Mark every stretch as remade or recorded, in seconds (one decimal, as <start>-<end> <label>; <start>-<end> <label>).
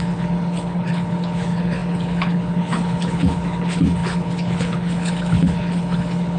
0.0-6.4 remade